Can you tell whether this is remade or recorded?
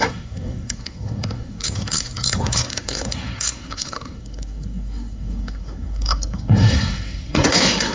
remade